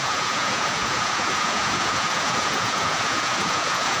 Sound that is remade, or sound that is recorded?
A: remade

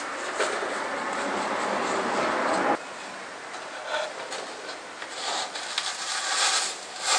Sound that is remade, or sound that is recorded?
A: recorded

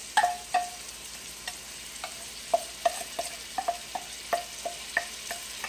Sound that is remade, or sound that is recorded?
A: recorded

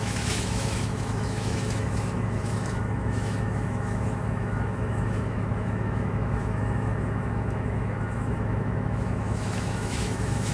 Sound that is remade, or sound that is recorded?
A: remade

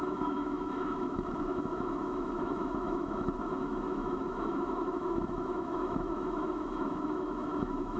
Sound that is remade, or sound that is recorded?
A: remade